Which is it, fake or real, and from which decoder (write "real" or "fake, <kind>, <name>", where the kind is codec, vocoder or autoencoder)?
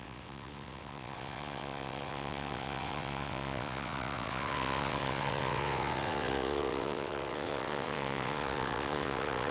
fake, vocoder, WaveNeXt